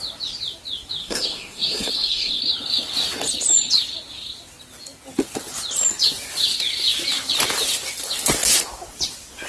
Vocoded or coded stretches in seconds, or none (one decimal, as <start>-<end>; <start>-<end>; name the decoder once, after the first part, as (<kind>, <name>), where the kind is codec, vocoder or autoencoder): 1.0-2.4 (codec, SNAC)